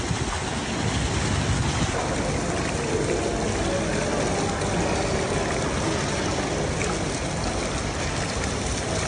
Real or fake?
real